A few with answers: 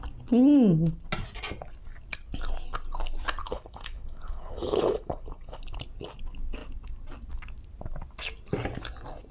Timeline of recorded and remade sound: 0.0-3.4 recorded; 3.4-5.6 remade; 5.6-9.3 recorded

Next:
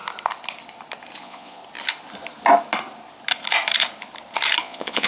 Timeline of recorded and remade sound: 0.0-1.2 recorded; 1.2-1.6 remade; 1.6-4.6 recorded; 4.6-5.1 remade

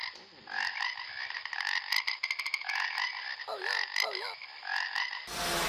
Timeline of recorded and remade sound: 0.0-5.7 recorded

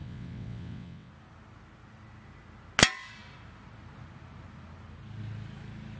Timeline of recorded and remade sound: 0.0-1.1 remade; 1.1-6.0 recorded

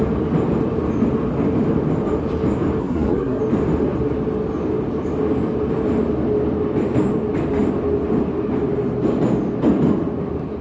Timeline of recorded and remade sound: 0.0-2.8 recorded; 2.8-3.4 remade; 3.4-10.6 recorded